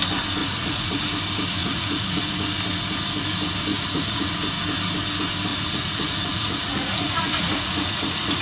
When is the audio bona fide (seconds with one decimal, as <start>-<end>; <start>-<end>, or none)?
0.0-0.4; 1.0-1.6; 2.2-3.7; 4.3-5.5